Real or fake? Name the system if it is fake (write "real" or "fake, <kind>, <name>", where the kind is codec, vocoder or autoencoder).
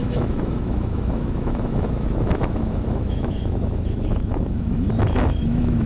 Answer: fake, autoencoder, DAC-VAE